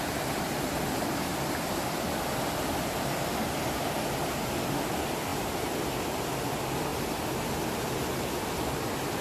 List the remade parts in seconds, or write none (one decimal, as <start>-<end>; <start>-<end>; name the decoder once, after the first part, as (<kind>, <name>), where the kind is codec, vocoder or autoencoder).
none